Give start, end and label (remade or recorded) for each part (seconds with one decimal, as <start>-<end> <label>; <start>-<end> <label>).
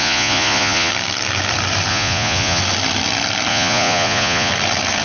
0.0-0.9 remade; 0.9-1.9 recorded; 1.9-2.6 remade; 2.6-3.5 recorded; 3.5-4.5 remade; 4.5-5.0 recorded